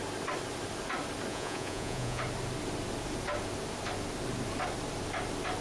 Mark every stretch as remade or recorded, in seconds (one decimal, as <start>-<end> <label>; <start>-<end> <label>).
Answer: 0.0-1.3 recorded; 1.3-2.2 remade; 2.2-5.6 recorded